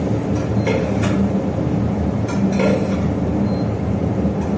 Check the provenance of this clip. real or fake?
real